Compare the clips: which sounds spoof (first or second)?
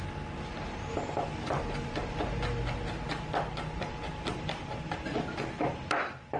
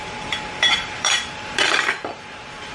second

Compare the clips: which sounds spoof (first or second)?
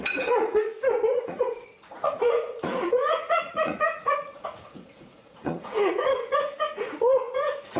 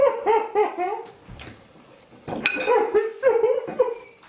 first